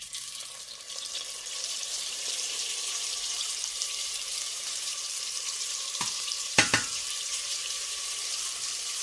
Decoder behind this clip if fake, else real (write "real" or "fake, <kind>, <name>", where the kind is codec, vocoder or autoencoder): fake, vocoder, BigVGAN v2